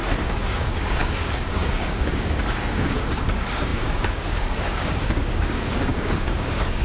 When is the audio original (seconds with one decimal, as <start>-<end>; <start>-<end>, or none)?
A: 0.0-0.5